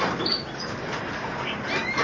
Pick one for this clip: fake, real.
real